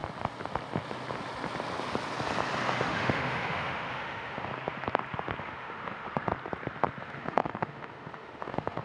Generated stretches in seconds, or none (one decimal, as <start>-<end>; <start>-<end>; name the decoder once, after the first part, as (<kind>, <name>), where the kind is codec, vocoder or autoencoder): 2.8-4.5 (autoencoder, DAC-VAE); 5.4-6.3; 7.0-8.8